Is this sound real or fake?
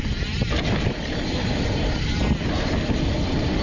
real